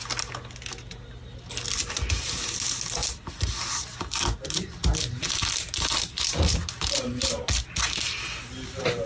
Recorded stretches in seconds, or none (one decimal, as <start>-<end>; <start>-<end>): 0.0-9.1